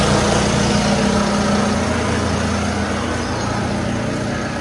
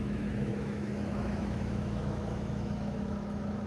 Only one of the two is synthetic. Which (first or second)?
second